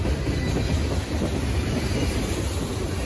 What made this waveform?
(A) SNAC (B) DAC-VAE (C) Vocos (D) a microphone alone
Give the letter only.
D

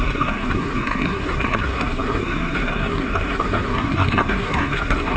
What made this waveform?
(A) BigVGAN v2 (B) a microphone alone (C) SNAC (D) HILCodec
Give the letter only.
C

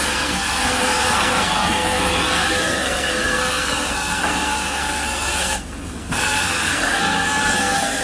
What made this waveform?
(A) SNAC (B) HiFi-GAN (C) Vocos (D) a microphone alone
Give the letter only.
A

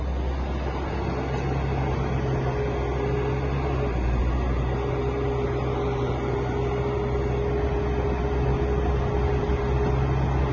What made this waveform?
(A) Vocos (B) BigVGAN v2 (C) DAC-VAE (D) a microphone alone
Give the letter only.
D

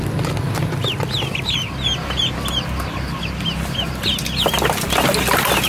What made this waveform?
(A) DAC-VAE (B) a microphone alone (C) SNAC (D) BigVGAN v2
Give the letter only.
B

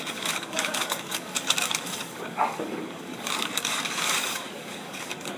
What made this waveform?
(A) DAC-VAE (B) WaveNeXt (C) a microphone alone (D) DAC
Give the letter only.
D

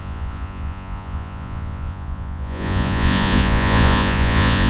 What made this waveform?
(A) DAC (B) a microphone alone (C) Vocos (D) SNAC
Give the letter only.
C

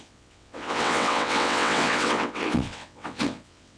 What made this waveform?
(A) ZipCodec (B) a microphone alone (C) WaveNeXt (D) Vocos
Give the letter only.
C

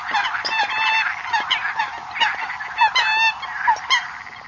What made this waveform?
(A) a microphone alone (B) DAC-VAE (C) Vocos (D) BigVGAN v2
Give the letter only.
A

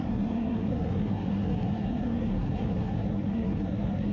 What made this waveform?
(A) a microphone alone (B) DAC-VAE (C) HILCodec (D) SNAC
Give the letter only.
D